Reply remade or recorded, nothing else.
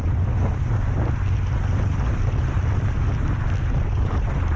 recorded